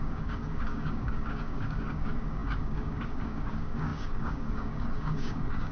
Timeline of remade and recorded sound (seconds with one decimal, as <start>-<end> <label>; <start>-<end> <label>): 0.0-5.7 remade